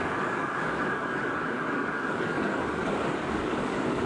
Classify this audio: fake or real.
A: fake